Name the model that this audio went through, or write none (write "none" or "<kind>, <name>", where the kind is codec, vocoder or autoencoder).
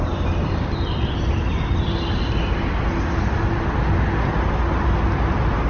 none